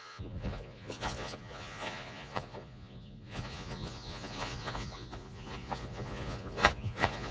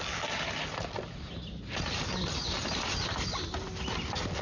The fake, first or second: first